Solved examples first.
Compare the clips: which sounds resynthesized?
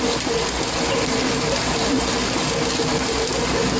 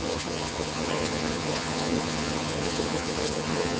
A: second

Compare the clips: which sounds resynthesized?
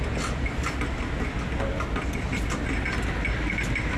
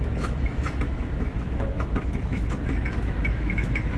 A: second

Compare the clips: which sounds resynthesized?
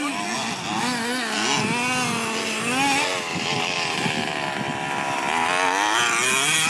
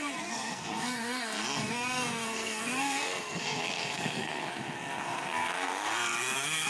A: second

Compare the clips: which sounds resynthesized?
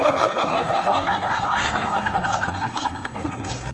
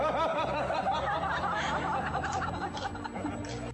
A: first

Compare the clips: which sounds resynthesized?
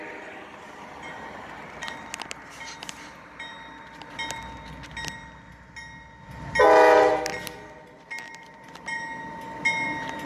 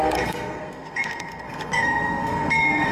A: second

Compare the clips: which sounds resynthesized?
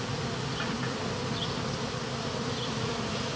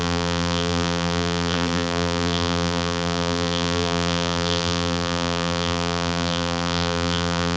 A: second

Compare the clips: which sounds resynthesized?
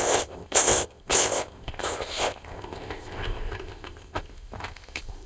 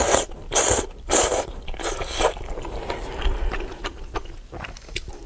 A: first